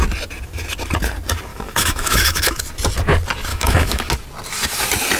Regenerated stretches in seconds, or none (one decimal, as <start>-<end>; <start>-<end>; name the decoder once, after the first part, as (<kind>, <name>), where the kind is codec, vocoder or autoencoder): 1.5-2.6 (autoencoder, DAC-VAE); 3.5-4.0